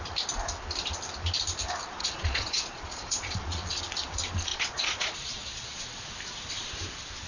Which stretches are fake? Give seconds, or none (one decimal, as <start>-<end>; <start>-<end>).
2.0-3.8; 4.5-5.8